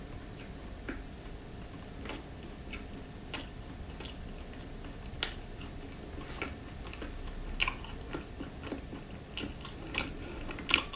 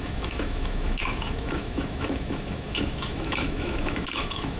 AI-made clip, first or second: second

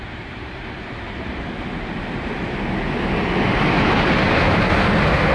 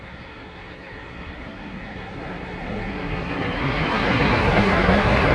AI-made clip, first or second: second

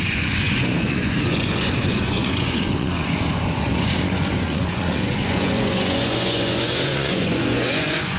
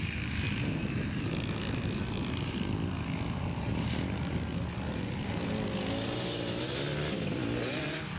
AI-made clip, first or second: first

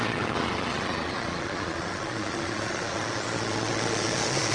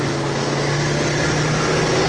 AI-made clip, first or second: first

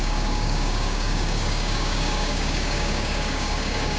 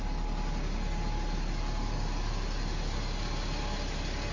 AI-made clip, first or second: first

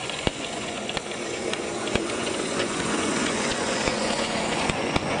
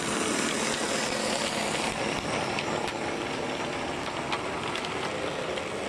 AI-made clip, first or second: first